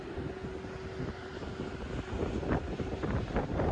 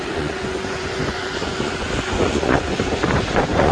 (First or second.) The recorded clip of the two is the first